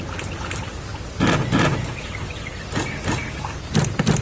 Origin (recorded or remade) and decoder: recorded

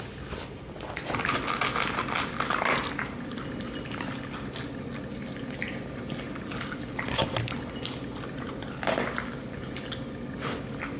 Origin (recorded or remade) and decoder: recorded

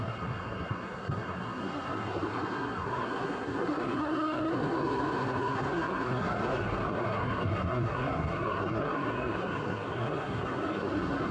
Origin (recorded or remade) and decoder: remade, codec, SNAC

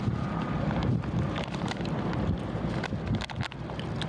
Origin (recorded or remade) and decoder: recorded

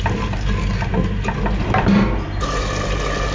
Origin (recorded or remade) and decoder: recorded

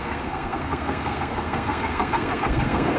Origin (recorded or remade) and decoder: remade, codec, SNAC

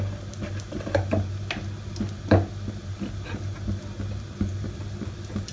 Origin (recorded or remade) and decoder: recorded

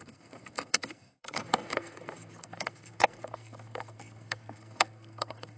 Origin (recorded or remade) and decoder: remade, codec, SNAC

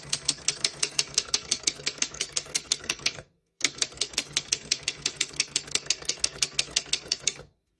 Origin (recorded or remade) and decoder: remade, codec, SNAC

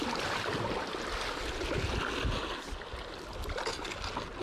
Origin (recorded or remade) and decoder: recorded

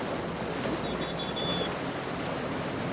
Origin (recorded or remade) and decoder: recorded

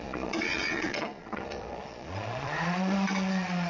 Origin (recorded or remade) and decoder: remade, vocoder, Vocos